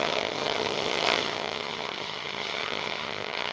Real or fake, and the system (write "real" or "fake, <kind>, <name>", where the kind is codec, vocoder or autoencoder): fake, vocoder, HiFi-GAN